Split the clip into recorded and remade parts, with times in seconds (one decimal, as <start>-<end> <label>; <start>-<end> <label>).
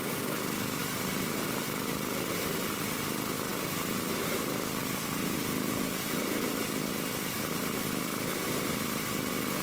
0.0-9.6 recorded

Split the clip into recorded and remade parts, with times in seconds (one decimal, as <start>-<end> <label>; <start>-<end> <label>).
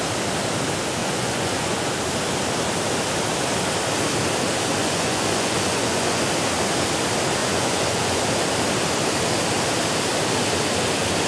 0.0-1.0 recorded; 1.0-1.9 remade; 1.9-4.8 recorded; 4.8-6.2 remade; 6.2-7.4 recorded; 7.4-8.2 remade; 8.2-11.3 recorded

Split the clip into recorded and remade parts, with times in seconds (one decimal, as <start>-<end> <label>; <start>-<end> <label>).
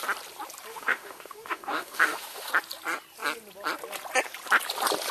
0.0-0.7 recorded; 0.7-2.5 remade; 2.5-5.1 recorded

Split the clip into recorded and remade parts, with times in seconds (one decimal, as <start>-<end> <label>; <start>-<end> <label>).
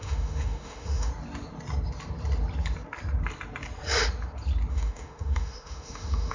0.0-1.1 remade; 1.1-4.7 recorded; 4.7-6.3 remade